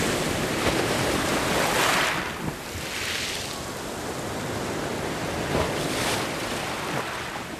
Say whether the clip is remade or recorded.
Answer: recorded